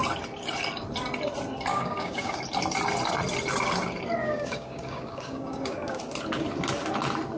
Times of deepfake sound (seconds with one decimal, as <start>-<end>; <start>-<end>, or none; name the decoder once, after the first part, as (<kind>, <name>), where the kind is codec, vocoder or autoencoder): 1.7-2.4 (codec, DAC); 4.2-6.0